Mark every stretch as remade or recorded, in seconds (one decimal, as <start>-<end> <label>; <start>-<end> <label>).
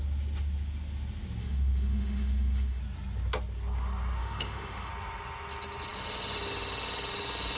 0.0-1.4 recorded; 1.4-2.8 remade; 2.8-4.2 recorded; 4.2-4.9 remade; 4.9-7.6 recorded